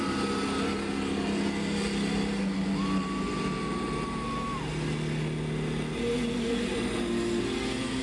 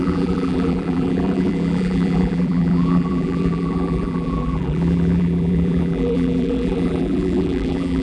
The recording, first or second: first